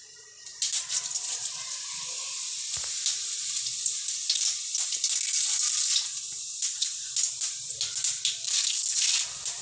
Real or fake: fake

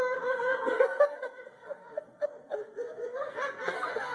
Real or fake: fake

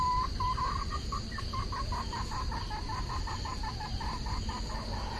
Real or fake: real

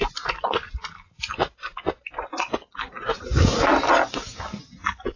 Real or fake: real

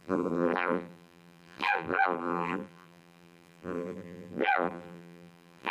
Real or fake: fake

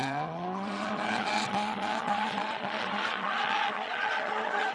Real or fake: fake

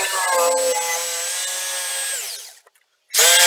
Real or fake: real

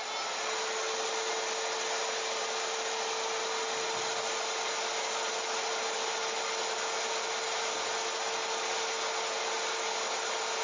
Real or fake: real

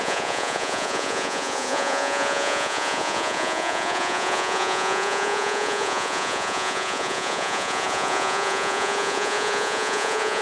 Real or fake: fake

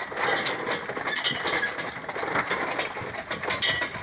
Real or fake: real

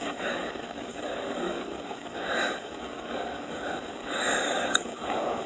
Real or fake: fake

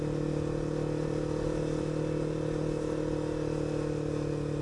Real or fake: real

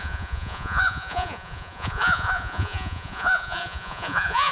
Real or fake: fake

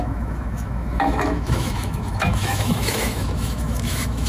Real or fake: fake